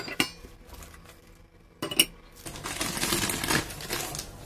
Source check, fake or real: real